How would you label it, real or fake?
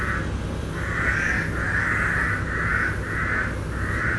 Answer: real